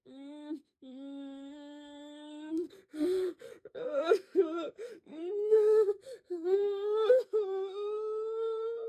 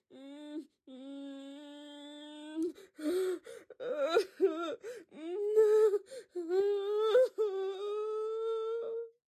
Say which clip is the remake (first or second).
first